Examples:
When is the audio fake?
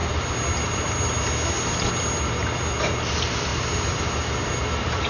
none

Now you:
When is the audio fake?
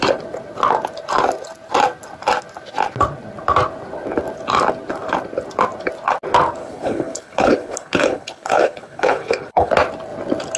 6.6-9.7 (codec, HILCodec)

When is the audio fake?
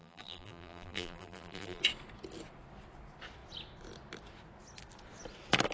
0.0-1.8 (vocoder, BigVGAN v2)